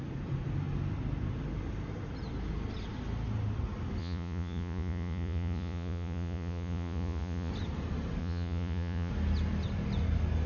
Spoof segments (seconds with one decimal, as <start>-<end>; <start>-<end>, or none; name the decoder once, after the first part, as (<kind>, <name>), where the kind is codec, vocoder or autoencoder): 4.0-7.5 (vocoder, Vocos); 8.2-9.1